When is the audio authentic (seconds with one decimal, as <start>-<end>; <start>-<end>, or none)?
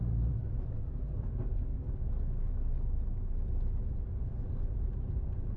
1.7-4.4